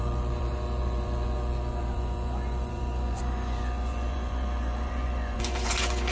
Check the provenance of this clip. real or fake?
fake